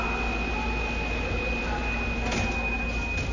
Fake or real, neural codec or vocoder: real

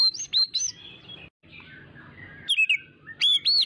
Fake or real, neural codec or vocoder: real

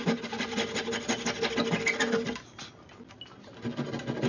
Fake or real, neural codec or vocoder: real